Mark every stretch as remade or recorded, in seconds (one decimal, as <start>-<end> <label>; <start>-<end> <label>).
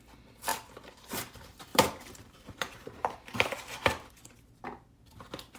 0.0-1.7 recorded; 1.7-4.1 remade; 4.1-5.6 recorded